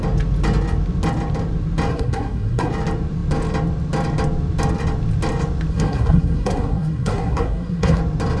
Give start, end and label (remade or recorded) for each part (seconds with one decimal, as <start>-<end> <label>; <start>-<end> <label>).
0.0-1.9 recorded; 1.9-2.7 remade; 2.7-5.7 recorded; 5.7-8.0 remade; 8.0-8.4 recorded